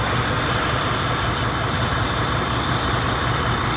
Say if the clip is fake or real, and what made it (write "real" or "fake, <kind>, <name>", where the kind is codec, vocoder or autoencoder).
real